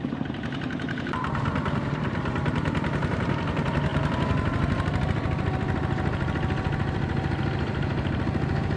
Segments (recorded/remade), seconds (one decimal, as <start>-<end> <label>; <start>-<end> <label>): 0.0-8.8 recorded